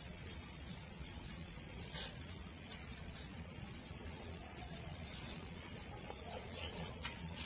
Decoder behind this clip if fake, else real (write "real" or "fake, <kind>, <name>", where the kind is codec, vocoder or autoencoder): fake, vocoder, Vocos